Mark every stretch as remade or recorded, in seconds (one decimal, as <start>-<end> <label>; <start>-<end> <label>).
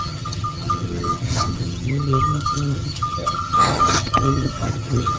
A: 0.0-5.2 remade